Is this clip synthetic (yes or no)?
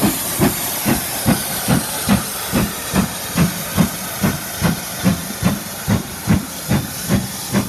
no